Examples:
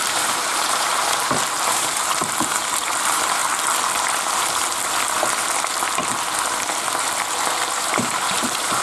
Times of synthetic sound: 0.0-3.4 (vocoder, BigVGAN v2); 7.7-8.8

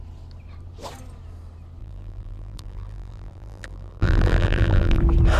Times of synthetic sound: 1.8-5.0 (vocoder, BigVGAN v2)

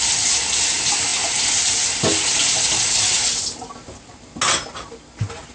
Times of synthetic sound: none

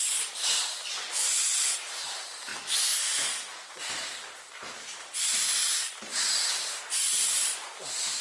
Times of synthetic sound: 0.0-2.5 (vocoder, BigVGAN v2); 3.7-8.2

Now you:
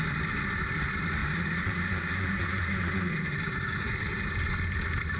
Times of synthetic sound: 1.2-4.3 (vocoder, BigVGAN v2)

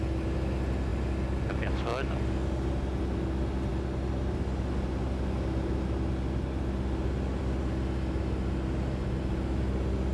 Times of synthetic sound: none

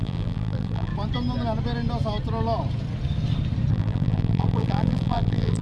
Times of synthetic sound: 0.0-0.9 (vocoder, BigVGAN v2); 3.7-5.6